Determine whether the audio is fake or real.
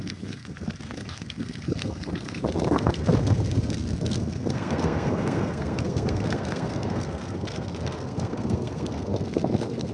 fake